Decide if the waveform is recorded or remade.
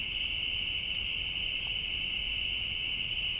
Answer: recorded